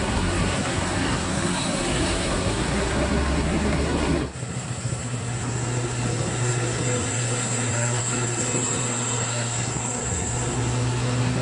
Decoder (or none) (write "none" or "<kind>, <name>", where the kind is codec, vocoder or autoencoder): codec, SNAC